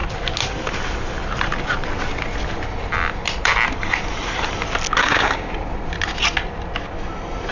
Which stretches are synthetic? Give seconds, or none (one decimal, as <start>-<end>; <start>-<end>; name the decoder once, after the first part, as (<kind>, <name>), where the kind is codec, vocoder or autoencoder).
5.0-5.5 (codec, DAC)